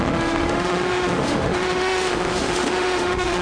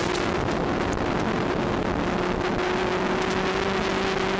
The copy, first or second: first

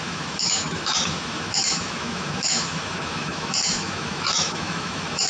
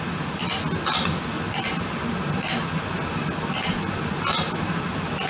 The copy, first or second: first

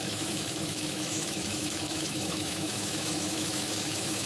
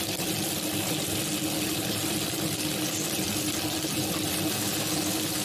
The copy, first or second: first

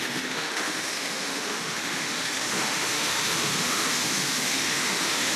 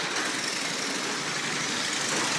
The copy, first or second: first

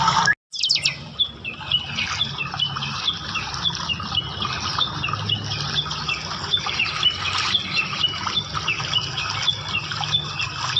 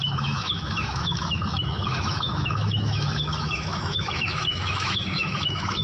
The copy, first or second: second